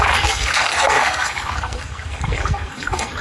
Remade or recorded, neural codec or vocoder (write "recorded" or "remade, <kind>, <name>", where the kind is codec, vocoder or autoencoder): remade, codec, SNAC